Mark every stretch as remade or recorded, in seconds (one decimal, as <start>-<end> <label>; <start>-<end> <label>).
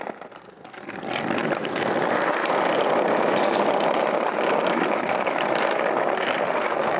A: 0.0-1.4 recorded; 1.4-5.6 remade; 5.6-7.0 recorded